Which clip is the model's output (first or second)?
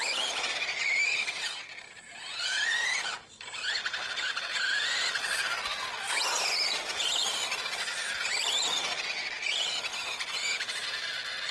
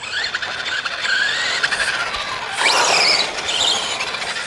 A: second